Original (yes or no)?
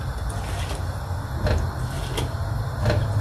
yes